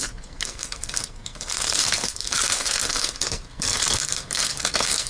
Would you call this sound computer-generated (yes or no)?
yes